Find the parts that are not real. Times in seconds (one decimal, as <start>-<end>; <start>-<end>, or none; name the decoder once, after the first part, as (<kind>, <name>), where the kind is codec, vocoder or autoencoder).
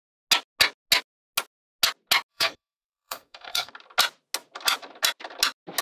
2.3-3.7 (codec, SNAC)